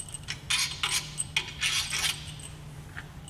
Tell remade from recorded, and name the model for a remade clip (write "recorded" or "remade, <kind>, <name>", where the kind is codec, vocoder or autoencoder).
recorded